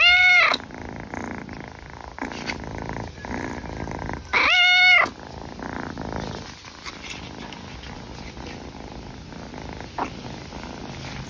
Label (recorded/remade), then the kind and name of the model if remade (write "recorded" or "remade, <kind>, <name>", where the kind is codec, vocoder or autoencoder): recorded